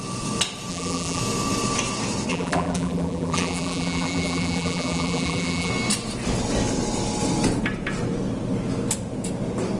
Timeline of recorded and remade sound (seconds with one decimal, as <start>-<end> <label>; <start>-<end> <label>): 0.0-0.7 recorded; 0.7-1.2 remade; 1.2-2.3 recorded; 2.3-5.7 remade; 5.7-9.8 recorded